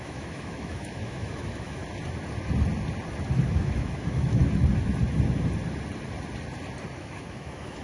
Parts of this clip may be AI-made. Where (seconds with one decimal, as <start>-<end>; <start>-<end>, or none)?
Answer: 0.0-1.8; 3.5-4.4; 7.0-7.8